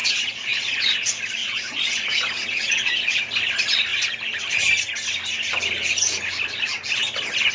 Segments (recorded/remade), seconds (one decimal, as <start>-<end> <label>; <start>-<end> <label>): 0.0-0.9 remade; 0.9-1.4 recorded; 1.4-3.2 remade; 3.2-7.5 recorded